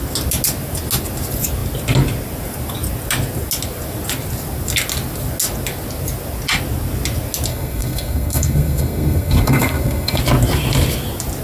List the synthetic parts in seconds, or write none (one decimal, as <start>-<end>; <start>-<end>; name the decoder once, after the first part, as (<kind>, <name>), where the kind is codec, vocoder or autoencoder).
7.5-10.2 (codec, SNAC)